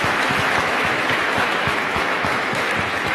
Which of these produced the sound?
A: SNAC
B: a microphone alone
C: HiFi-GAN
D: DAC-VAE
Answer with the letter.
D